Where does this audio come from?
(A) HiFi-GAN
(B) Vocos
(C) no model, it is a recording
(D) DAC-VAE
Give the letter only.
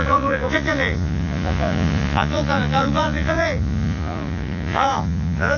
B